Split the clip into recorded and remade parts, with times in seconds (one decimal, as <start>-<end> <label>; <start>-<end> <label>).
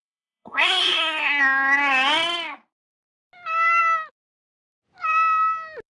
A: 0.0-1.4 remade; 1.4-5.9 recorded